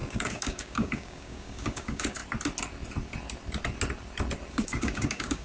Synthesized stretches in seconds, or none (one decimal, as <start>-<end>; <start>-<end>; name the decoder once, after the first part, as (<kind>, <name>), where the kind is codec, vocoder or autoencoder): 0.0-2.2 (codec, DAC); 4.5-5.4